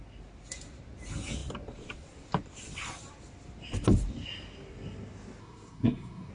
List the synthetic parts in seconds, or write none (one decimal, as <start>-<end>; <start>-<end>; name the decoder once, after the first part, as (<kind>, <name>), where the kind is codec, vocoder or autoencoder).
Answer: 5.4-6.3 (codec, SNAC)